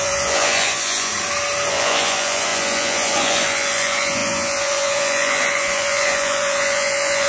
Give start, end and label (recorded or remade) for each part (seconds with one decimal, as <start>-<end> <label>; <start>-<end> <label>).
0.0-1.1 remade; 1.1-1.7 recorded; 1.7-7.3 remade